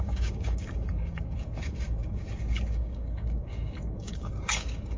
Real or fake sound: fake